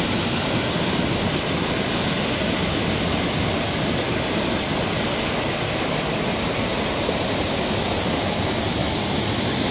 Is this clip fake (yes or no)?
no